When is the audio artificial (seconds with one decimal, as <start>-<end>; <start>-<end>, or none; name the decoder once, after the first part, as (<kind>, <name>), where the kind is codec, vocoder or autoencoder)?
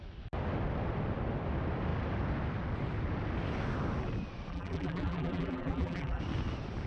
4.5-6.2 (vocoder, BigVGAN v2)